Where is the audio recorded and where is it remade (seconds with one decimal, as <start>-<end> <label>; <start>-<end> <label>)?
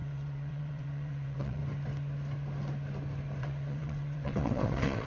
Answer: 0.0-1.6 remade; 1.6-3.4 recorded; 3.4-5.1 remade